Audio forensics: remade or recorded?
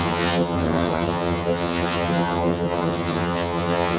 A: remade